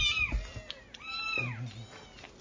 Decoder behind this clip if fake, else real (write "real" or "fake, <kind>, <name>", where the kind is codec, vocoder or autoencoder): real